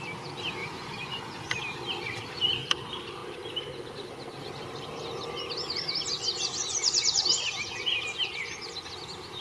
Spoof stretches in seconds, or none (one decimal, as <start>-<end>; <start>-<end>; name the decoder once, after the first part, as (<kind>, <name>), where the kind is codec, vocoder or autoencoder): 0.6-1.6 (vocoder, Vocos)